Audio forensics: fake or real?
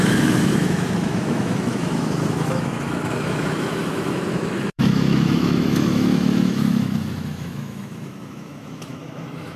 fake